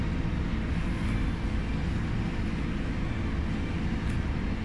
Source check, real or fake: real